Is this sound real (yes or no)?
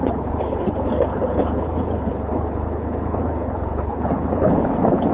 no